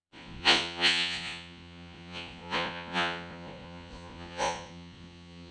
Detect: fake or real fake